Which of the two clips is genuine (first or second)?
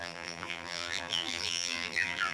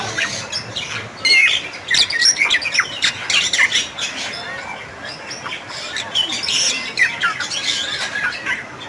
second